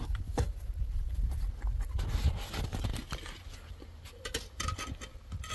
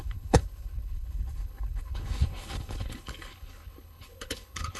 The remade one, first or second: second